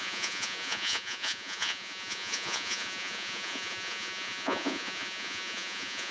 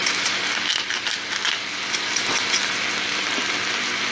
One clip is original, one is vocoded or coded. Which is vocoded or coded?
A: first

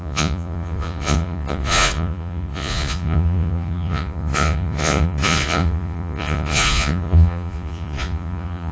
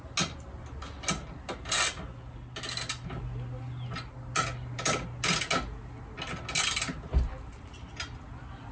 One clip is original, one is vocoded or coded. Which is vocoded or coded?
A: first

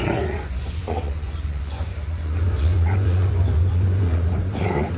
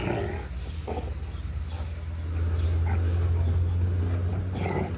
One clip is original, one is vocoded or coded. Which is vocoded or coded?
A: first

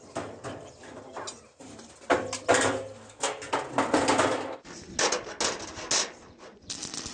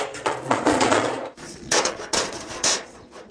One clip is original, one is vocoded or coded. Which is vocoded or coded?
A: second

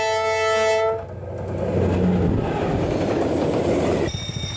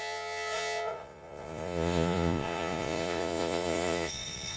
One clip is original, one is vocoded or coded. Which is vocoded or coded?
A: second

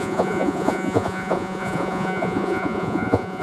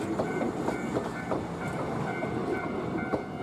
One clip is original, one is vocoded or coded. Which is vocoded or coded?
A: first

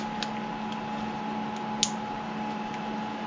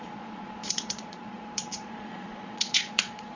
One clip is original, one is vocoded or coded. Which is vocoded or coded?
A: second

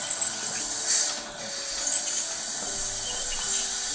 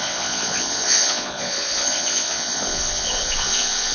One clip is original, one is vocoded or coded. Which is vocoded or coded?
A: second